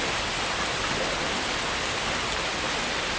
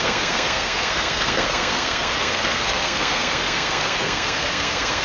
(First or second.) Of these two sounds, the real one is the first